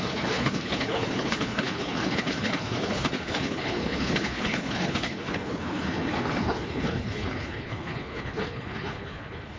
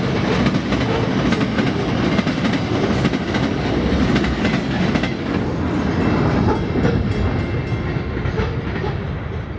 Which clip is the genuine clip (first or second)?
second